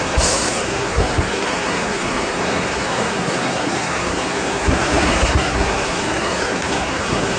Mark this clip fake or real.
fake